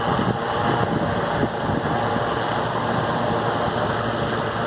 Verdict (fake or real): real